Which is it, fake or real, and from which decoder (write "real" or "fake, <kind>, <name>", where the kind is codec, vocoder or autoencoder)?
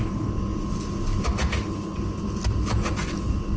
real